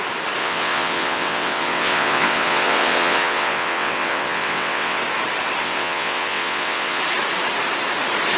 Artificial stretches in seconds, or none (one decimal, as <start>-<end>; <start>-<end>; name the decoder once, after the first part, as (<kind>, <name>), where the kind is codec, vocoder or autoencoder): 0.4-5.0 (vocoder, WaveNeXt); 5.6-7.0

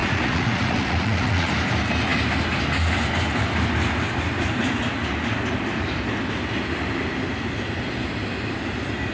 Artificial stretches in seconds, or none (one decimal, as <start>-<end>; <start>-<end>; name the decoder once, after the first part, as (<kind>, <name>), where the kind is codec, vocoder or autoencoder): 0.0-1.5 (vocoder, Vocos)

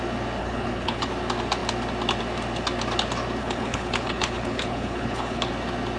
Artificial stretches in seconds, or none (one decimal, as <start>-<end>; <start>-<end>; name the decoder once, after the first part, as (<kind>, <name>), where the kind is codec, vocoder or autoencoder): 0.4-1.1 (codec, HILCodec); 3.4-5.5

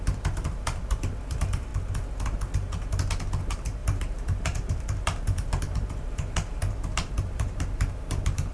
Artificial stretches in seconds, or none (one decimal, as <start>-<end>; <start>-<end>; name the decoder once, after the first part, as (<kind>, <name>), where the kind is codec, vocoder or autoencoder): 0.0-1.7 (vocoder, BigVGAN v2); 3.4-8.5

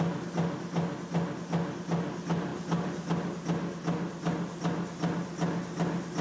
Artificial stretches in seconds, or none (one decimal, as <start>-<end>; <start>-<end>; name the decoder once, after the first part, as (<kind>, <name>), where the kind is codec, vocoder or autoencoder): none